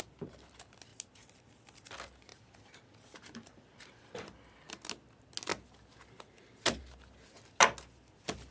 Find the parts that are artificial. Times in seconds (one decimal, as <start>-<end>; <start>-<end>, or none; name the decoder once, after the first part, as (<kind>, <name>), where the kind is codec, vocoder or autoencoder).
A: 2.3-4.8 (vocoder, BigVGAN v2)